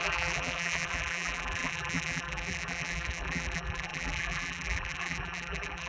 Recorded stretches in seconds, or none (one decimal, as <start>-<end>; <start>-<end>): none